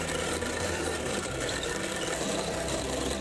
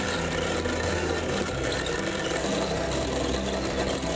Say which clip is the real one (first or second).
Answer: second